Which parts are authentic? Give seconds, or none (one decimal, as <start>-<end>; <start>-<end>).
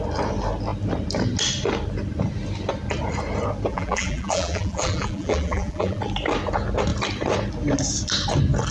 0.0-3.7; 6.0-8.7